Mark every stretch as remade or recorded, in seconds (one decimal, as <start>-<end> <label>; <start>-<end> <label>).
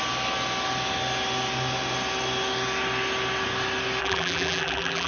0.0-4.0 recorded; 4.0-5.1 remade